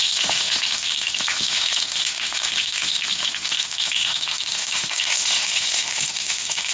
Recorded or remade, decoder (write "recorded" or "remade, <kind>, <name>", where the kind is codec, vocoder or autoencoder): remade, autoencoder, DAC-VAE